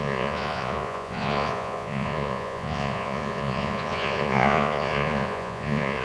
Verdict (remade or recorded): remade